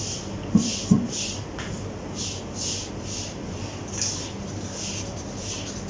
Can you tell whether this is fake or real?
real